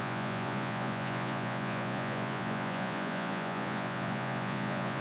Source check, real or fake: fake